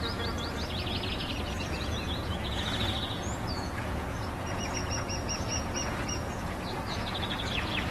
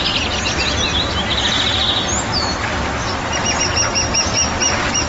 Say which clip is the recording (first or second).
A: second